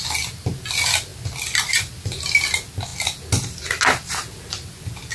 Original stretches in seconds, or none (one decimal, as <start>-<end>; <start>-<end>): 0.0-5.1